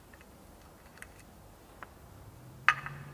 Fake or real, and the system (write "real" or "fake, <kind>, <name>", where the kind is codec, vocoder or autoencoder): real